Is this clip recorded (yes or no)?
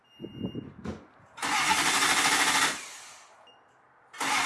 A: yes